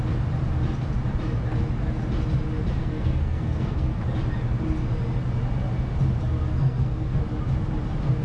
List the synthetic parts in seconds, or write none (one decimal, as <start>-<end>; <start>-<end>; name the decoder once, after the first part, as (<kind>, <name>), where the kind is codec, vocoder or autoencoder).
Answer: 2.8-4.0 (codec, SNAC); 6.5-7.2